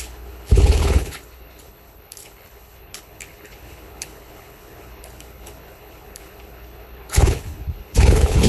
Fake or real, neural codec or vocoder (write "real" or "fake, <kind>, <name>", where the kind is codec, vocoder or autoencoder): fake, codec, HILCodec